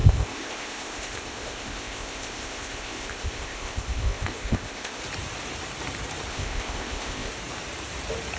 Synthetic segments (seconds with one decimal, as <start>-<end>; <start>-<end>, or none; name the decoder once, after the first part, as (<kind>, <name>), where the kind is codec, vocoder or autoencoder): 0.0-5.0 (codec, ZipCodec); 6.3-7.3